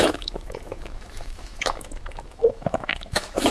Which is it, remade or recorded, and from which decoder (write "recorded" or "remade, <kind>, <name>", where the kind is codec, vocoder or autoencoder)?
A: remade, autoencoder, DAC-VAE